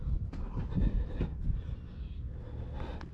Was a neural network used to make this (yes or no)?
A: no